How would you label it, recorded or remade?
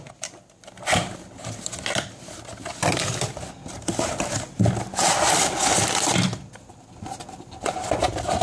recorded